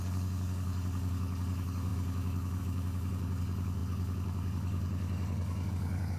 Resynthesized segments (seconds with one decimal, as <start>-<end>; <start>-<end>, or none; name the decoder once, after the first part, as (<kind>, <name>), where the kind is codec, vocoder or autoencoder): 0.0-6.2 (codec, DAC)

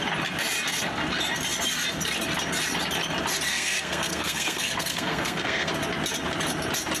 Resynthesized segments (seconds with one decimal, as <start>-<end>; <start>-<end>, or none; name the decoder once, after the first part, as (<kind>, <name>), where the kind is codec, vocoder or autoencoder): 3.5-5.7 (codec, SNAC)

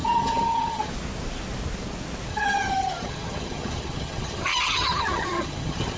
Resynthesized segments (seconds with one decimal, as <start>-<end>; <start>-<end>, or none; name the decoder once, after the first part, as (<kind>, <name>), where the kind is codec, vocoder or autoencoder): 0.0-0.9 (vocoder, HiFi-GAN); 2.3-6.0

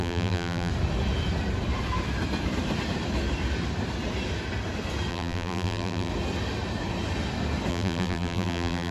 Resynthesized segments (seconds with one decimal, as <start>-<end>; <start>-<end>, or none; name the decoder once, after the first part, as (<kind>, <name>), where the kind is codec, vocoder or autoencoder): 0.0-0.7 (vocoder, BigVGAN v2); 5.1-6.1; 7.7-8.9

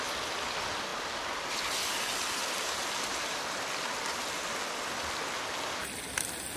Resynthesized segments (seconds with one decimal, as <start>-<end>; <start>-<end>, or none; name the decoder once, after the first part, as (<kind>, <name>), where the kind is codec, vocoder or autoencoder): none

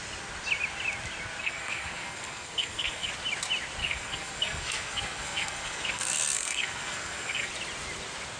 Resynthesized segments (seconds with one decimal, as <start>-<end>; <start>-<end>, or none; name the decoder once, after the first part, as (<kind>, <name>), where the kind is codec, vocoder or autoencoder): 1.4-3.1 (codec, SNAC); 3.8-7.5

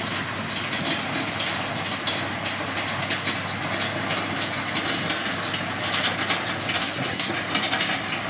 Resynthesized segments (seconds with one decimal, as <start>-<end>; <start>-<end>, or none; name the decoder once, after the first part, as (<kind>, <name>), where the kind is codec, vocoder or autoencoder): 6.8-7.3 (codec, SNAC)

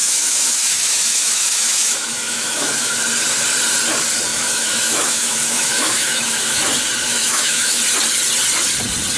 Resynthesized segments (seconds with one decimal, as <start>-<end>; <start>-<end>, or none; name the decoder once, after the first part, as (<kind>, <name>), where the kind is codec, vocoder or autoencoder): 0.0-3.0 (autoencoder, DAC-VAE); 4.3-6.6; 7.1-7.8